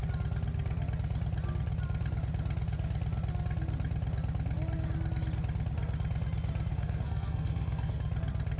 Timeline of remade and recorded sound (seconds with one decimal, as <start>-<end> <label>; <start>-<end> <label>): 0.0-6.7 recorded; 6.7-8.0 remade; 8.0-8.6 recorded